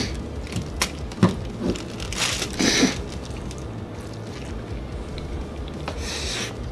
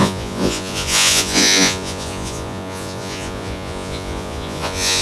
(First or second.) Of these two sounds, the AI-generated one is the second